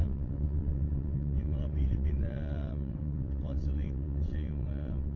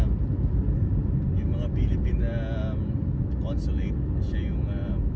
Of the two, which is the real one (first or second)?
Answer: second